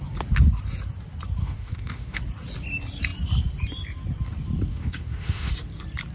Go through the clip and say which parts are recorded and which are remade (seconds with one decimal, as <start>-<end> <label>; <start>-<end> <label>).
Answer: 0.0-1.4 recorded; 1.4-2.2 remade; 2.2-4.7 recorded; 4.7-5.5 remade; 5.5-6.1 recorded